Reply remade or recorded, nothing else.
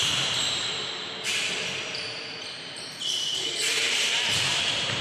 remade